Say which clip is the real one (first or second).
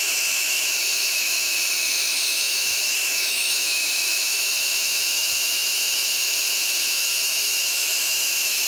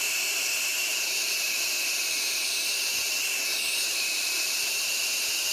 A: second